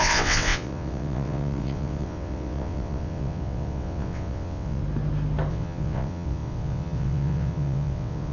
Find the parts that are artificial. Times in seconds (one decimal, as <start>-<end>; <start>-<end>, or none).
0.0-4.8; 5.5-8.3